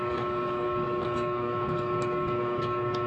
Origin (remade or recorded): remade